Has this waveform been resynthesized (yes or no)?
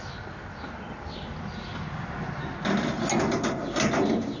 no